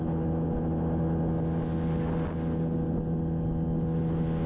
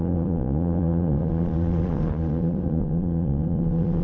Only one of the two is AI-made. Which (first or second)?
second